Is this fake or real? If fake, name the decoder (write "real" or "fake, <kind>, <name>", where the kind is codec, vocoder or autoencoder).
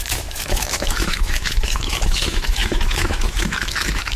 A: fake, autoencoder, DAC-VAE